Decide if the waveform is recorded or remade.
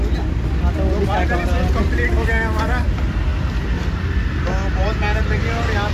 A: recorded